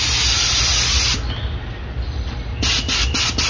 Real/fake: real